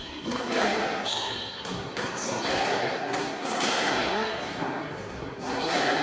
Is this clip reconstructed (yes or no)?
yes